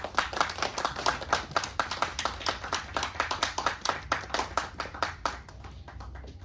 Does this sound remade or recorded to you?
recorded